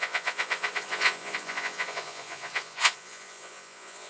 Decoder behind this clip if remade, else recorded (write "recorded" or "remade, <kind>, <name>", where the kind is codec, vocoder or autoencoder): remade, vocoder, Vocos